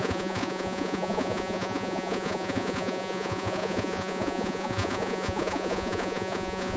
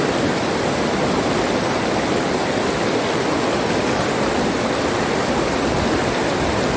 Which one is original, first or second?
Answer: second